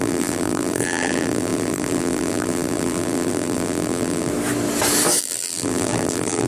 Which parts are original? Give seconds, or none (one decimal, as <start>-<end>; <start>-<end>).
4.3-5.2